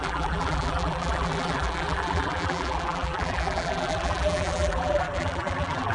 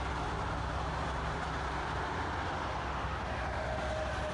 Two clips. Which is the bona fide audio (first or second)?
second